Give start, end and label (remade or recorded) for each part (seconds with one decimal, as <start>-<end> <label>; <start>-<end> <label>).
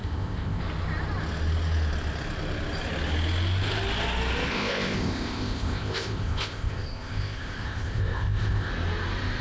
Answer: 0.0-0.6 remade; 0.6-4.5 recorded; 4.5-8.7 remade; 8.7-9.4 recorded